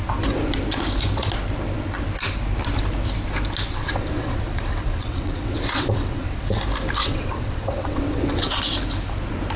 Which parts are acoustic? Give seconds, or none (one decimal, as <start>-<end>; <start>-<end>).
0.0-3.7; 6.6-7.0; 8.5-9.6